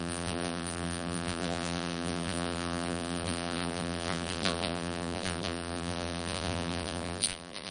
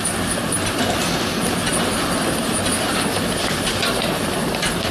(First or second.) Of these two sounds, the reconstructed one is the first